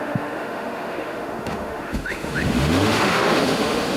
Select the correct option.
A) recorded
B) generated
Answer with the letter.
B